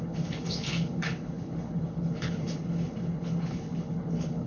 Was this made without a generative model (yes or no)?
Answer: no